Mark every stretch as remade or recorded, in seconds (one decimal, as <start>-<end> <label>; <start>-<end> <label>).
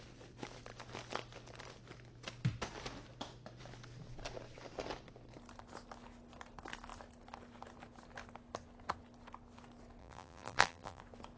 0.0-10.0 recorded; 10.0-11.0 remade; 11.0-11.4 recorded